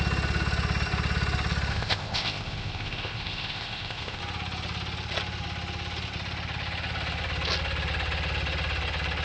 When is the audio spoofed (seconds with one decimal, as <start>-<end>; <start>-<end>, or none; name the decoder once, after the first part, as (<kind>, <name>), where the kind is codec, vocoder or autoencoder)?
1.7-4.2 (codec, ZipCodec)

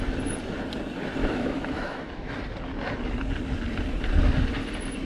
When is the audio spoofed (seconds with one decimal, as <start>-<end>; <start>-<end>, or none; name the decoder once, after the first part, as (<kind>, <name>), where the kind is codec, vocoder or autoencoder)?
1.2-2.3 (autoencoder, DAC-VAE)

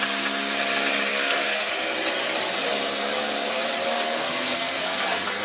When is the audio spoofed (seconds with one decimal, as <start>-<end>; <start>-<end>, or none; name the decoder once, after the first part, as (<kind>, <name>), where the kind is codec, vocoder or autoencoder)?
1.1-1.7 (codec, SNAC); 3.9-5.4

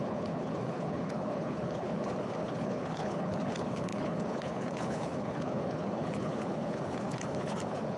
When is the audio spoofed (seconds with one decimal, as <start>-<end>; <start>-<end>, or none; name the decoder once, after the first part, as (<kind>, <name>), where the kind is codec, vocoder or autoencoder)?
0.0-8.0 (codec, HILCodec)

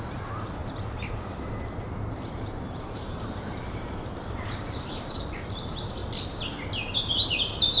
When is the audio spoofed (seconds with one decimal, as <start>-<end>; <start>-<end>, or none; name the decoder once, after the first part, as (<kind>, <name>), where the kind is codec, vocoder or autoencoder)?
0.0-6.0 (vocoder, BigVGAN v2); 7.1-7.8